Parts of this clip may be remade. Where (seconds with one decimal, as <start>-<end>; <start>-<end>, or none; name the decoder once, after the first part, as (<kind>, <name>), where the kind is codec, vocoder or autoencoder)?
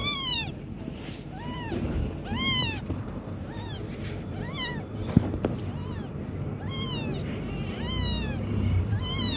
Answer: 0.0-2.0 (vocoder, BigVGAN v2); 2.6-4.1